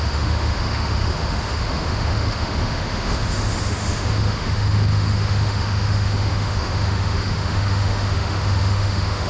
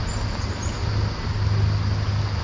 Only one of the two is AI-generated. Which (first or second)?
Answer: first